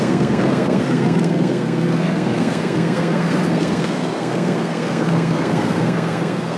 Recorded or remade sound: remade